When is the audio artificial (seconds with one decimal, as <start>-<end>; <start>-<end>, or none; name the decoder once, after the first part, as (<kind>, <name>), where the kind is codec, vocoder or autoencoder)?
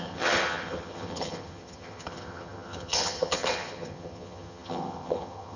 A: 0.0-5.6 (vocoder, HiFi-GAN)